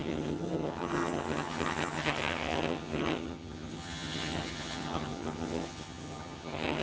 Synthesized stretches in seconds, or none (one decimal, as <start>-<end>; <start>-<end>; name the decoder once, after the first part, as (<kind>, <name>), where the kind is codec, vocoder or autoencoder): 0.0-6.8 (vocoder, HiFi-GAN)